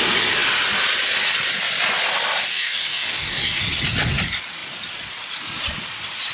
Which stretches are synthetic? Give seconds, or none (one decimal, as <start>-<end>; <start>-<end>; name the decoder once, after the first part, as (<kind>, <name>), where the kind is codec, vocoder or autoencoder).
2.5-3.6 (codec, DAC)